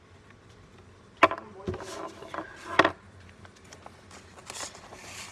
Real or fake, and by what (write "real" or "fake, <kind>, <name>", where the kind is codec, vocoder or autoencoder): real